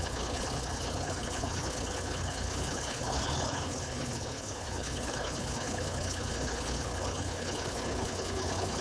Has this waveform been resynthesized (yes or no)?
yes